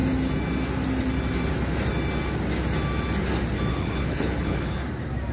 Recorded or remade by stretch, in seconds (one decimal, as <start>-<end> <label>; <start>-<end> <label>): 0.0-3.7 recorded; 3.7-4.8 remade; 4.8-5.3 recorded